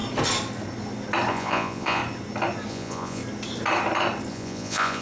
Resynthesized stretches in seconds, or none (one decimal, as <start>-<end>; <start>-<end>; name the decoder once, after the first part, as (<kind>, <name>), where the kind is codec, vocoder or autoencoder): 1.3-2.0 (vocoder, Vocos); 2.7-3.2; 4.3-5.0